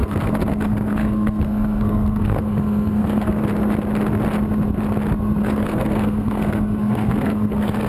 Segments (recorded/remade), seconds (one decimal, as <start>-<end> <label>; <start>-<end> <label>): 0.0-3.4 remade; 3.4-5.4 recorded; 5.4-7.9 remade